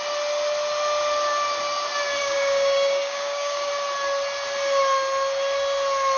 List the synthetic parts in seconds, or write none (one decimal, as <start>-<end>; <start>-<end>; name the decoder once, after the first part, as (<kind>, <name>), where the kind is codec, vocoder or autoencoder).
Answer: 2.2-3.7 (codec, DAC)